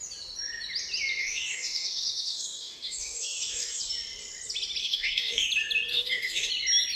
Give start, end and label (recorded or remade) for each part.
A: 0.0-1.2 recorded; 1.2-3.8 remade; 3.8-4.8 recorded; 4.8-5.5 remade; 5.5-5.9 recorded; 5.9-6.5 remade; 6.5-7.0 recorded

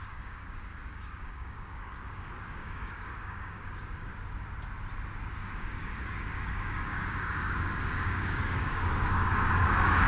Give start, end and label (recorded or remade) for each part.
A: 0.0-4.1 remade; 4.1-5.3 recorded; 5.3-10.1 remade

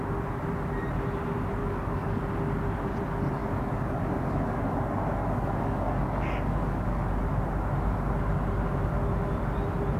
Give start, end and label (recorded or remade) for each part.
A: 0.0-1.6 recorded; 1.6-2.2 remade; 2.2-3.4 recorded; 3.4-7.1 remade; 7.1-10.0 recorded

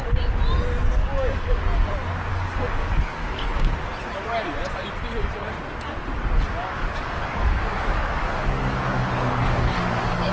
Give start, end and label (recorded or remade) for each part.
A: 0.0-1.0 recorded; 1.0-1.6 remade; 1.6-2.3 recorded; 2.3-3.7 remade; 3.7-6.6 recorded; 6.6-10.3 remade

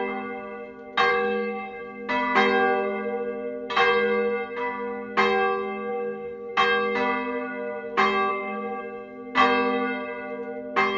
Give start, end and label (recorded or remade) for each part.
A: 0.0-1.1 recorded; 1.1-1.8 remade; 1.8-5.9 recorded; 5.9-6.5 remade; 6.5-8.3 recorded; 8.3-8.8 remade; 8.8-11.0 recorded